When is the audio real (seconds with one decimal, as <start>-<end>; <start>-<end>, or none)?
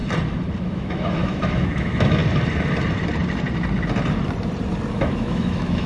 0.0-0.6; 2.2-4.9